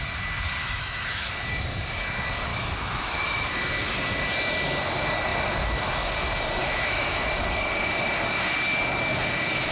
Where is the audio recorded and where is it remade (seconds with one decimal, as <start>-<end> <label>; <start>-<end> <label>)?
0.0-0.6 recorded; 0.6-1.3 remade; 1.3-2.5 recorded; 2.5-3.6 remade; 3.6-6.6 recorded; 6.6-7.3 remade; 7.3-9.7 recorded